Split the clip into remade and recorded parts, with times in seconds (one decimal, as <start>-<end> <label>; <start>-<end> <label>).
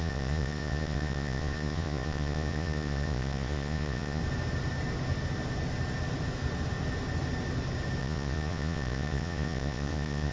0.0-4.2 remade; 4.2-8.0 recorded; 8.0-10.3 remade